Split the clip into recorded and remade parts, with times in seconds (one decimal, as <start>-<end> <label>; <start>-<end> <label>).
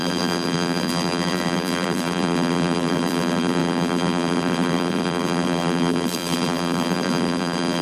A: 0.0-7.8 remade